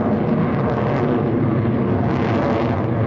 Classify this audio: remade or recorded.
recorded